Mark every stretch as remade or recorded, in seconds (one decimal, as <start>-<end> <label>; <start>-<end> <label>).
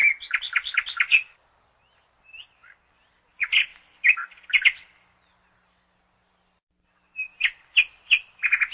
0.0-8.7 recorded